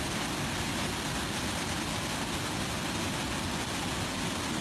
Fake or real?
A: real